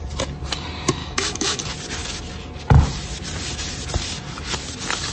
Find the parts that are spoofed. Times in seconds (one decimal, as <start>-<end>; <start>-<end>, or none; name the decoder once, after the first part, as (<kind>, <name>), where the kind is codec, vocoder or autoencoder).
1.0-1.6 (autoencoder, DAC-VAE)